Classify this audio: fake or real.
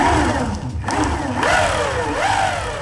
real